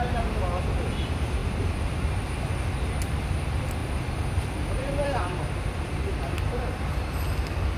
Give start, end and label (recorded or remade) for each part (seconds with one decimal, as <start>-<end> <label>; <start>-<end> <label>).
0.0-3.8 recorded; 3.8-5.2 remade; 5.2-7.8 recorded